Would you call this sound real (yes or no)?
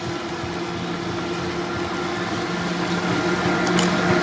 yes